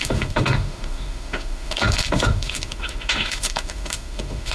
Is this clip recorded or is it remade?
remade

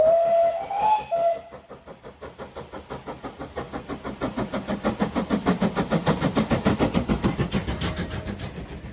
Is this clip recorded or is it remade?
recorded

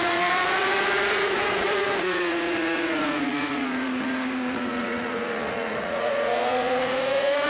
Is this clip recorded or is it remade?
remade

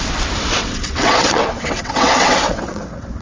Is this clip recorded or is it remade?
remade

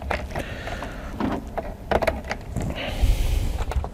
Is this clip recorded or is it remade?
recorded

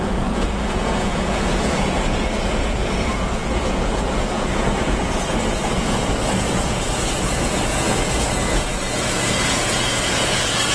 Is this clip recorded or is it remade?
remade